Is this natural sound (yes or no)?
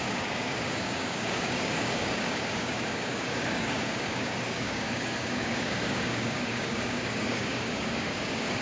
no